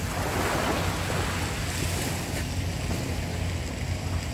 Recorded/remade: recorded